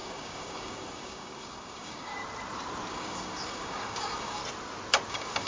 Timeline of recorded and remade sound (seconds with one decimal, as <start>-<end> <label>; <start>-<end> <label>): 0.0-2.1 remade; 2.1-2.9 recorded; 2.9-4.4 remade; 4.4-5.1 recorded; 5.1-5.5 remade